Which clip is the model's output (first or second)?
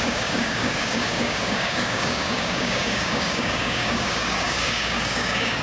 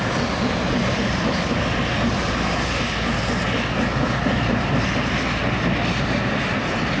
first